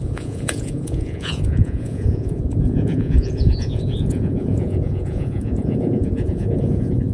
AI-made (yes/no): yes